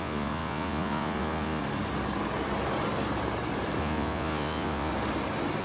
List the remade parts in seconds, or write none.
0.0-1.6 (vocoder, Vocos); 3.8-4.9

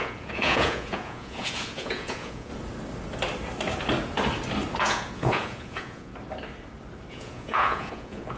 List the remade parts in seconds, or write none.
0.0-2.5 (vocoder, Vocos); 4.8-6.1; 7.1-8.4